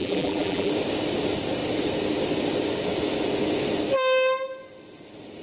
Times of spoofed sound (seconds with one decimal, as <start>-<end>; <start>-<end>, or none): 0.0-0.7